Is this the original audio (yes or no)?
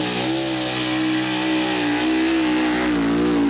yes